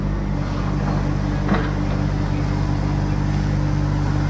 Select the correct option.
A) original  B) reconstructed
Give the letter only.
A